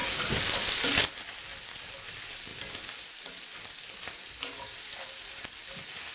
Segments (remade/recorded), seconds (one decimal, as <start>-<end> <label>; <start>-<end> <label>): 0.0-6.1 recorded